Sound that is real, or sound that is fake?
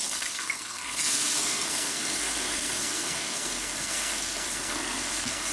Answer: fake